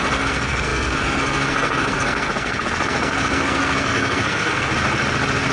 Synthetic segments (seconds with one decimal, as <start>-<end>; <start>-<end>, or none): 0.0-4.7